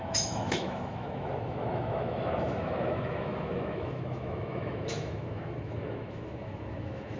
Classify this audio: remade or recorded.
remade